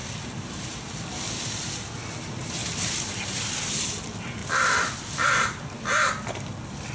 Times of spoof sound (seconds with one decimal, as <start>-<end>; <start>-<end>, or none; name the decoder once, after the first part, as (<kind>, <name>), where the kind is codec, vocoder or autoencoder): 0.0-1.9 (vocoder, BigVGAN v2); 2.6-3.7; 4.4-5.8

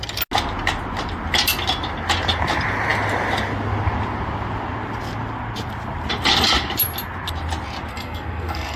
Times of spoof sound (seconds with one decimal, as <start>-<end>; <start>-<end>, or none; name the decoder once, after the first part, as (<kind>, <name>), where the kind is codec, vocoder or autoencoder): 7.9-8.8 (codec, SNAC)